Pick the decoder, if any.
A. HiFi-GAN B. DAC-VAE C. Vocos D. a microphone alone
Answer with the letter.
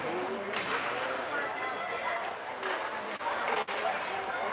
D